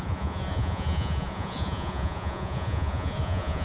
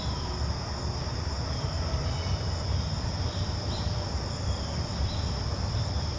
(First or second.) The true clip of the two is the second